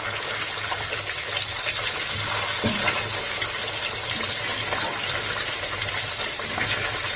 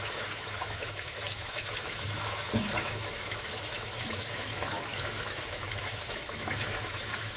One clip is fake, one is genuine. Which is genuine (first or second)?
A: first